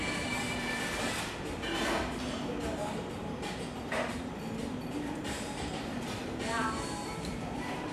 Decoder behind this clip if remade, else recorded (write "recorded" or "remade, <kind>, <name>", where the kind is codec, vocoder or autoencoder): remade, vocoder, BigVGAN v2